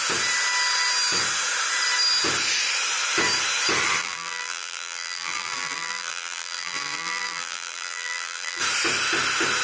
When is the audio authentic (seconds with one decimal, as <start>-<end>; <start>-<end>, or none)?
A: 0.0-4.0; 8.6-9.6